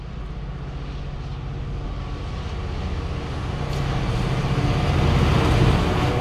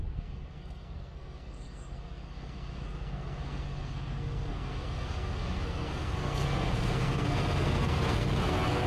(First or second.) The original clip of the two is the first